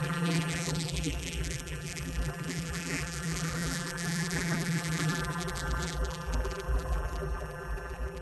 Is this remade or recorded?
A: remade